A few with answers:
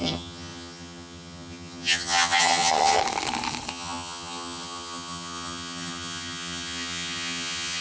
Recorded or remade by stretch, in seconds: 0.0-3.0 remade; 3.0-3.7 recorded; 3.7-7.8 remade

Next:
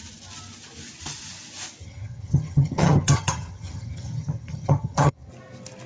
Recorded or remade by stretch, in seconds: 0.0-1.8 recorded; 1.8-5.3 remade; 5.3-5.9 recorded